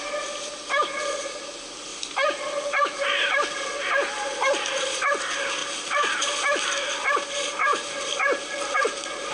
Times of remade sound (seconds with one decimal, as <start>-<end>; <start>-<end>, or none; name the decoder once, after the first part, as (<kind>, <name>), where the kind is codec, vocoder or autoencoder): 1.9-5.0 (vocoder, BigVGAN v2); 5.6-7.3; 7.7-9.3